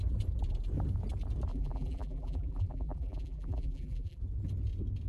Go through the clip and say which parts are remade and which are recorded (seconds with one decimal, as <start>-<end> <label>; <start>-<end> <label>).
0.0-1.5 recorded; 1.5-4.2 remade; 4.2-5.1 recorded